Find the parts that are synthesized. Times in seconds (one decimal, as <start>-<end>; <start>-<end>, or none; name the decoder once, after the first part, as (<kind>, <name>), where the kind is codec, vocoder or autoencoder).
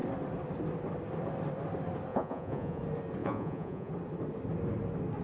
2.1-2.8 (vocoder, Vocos); 3.2-3.9